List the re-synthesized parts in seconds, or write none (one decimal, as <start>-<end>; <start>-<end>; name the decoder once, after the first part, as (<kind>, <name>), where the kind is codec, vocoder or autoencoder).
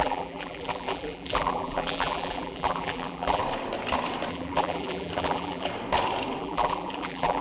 0.0-3.4 (vocoder, BigVGAN v2); 4.3-5.7; 6.4-7.4